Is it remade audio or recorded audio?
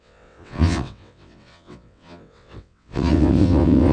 remade